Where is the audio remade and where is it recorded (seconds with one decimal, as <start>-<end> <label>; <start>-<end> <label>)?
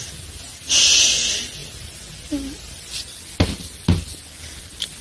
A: 0.0-5.0 recorded